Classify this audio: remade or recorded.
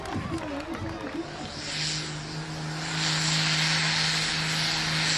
recorded